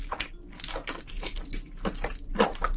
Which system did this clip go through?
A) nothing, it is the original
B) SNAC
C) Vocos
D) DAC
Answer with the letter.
A